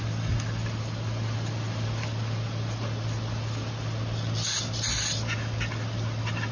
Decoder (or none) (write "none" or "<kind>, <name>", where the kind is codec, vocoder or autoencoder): none